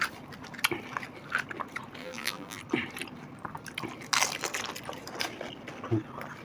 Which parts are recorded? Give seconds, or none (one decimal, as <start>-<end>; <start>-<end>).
0.0-2.0; 2.6-6.4